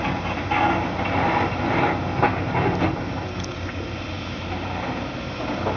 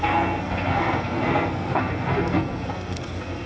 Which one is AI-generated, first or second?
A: second